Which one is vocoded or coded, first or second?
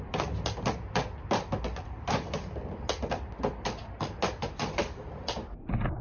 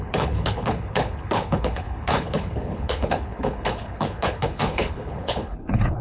second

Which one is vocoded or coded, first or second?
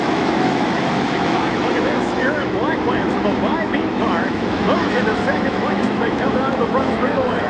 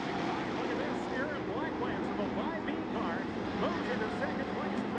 first